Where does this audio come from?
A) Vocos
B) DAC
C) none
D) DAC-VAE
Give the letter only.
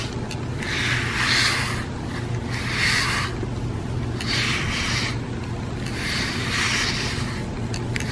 C